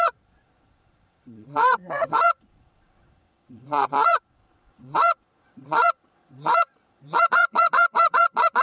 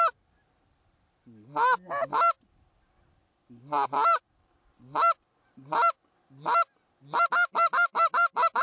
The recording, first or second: second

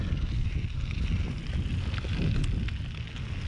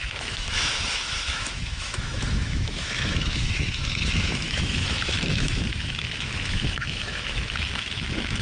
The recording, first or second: first